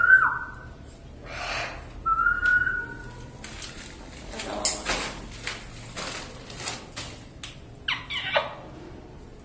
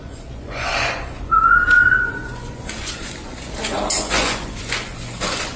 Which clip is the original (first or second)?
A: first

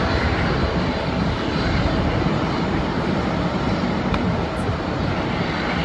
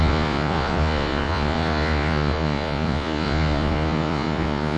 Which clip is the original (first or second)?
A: first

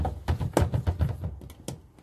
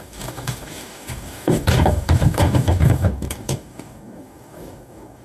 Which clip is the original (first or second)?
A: first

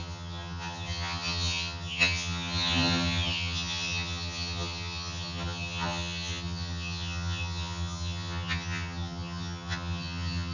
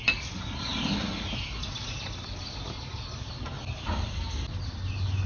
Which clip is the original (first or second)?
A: second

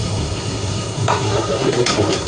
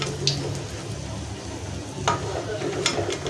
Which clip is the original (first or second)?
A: second